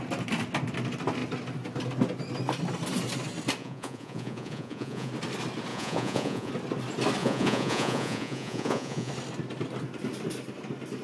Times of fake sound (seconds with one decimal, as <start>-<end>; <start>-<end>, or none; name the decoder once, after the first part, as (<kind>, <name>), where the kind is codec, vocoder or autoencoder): 3.6-5.1 (vocoder, Vocos); 5.7-6.5; 7.2-9.1